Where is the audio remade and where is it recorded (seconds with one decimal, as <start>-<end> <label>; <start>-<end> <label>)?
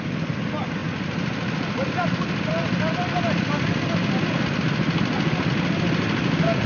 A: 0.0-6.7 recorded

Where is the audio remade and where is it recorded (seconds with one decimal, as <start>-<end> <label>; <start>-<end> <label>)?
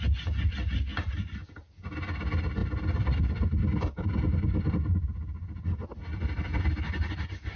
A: 0.0-7.6 recorded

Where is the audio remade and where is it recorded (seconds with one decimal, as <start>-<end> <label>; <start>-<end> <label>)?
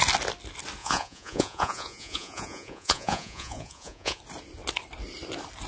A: 0.0-0.8 recorded; 0.8-4.2 remade; 4.2-5.7 recorded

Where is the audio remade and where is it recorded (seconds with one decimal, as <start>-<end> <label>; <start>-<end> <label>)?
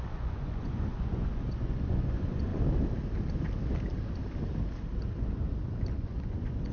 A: 0.0-2.5 remade; 2.5-5.9 recorded; 5.9-6.7 remade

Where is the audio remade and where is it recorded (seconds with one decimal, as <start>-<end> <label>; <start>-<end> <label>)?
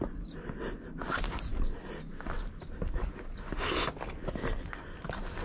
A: 0.0-5.4 recorded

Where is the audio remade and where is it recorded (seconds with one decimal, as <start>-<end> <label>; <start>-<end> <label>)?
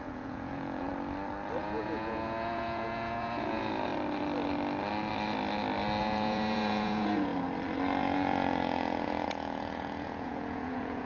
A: 0.0-0.9 remade; 0.9-1.6 recorded; 1.6-3.9 remade; 3.9-6.0 recorded; 6.0-7.3 remade; 7.3-8.0 recorded; 8.0-11.1 remade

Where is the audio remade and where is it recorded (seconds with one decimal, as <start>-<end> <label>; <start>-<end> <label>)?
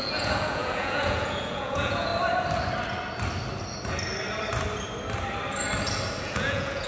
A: 0.0-2.1 remade; 2.1-6.2 recorded; 6.2-6.9 remade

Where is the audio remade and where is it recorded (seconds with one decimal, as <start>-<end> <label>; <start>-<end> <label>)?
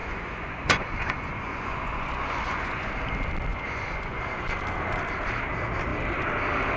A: 0.0-2.9 remade; 2.9-3.5 recorded; 3.5-4.2 remade; 4.2-6.8 recorded